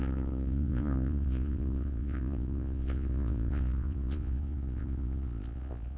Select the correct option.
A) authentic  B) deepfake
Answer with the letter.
B